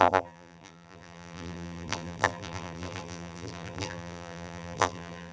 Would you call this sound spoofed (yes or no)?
yes